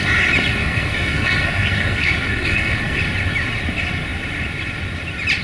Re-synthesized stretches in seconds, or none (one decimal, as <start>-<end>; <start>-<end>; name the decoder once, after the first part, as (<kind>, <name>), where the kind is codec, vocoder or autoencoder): 0.6-3.0 (codec, SNAC)